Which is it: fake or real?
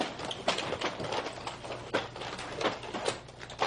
real